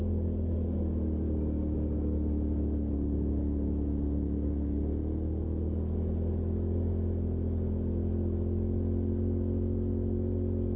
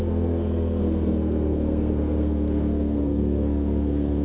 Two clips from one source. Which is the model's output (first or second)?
second